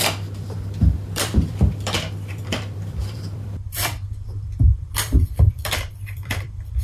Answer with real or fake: fake